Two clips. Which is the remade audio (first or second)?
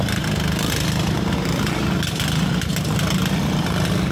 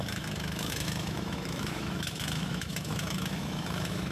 second